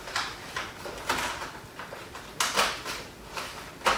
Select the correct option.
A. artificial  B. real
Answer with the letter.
B